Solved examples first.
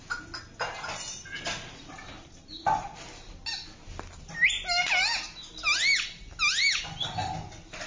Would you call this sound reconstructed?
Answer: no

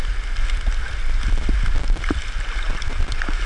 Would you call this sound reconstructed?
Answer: no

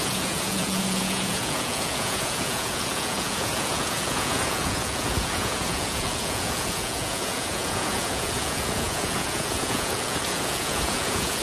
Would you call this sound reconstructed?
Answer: yes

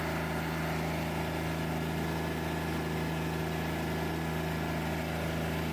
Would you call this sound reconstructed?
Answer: no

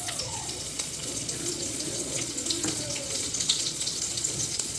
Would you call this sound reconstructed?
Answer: yes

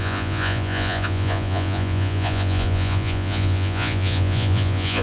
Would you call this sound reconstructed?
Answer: yes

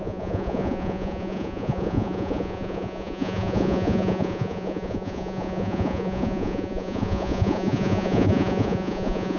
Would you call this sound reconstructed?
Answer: yes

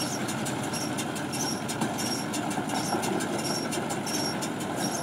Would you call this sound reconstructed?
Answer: no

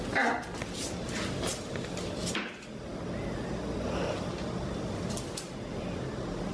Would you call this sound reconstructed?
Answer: no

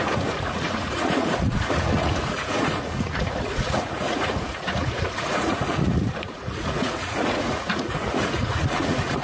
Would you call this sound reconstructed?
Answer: yes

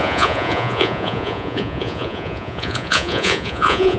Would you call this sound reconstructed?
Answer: yes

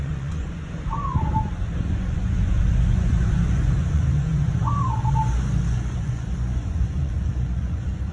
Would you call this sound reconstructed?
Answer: yes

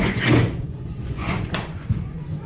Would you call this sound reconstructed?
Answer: yes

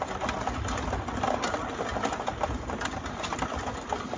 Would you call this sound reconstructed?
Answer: no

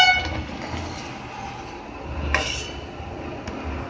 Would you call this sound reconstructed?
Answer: no